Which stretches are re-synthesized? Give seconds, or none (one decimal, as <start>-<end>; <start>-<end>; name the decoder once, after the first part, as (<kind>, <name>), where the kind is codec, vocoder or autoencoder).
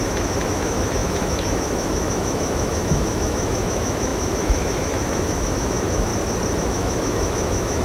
0.0-6.1 (autoencoder, DAC-VAE); 6.6-7.8